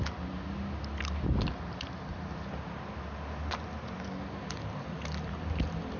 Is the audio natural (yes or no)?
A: yes